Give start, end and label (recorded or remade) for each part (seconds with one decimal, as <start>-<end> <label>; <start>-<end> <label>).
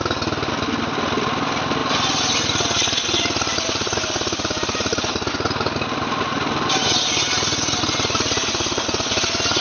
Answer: 0.0-1.8 recorded; 1.8-5.3 remade; 5.3-9.6 recorded